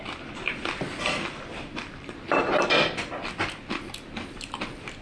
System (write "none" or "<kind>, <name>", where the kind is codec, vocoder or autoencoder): vocoder, BigVGAN v2